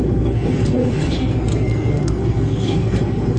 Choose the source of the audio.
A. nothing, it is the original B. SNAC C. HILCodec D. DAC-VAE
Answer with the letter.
B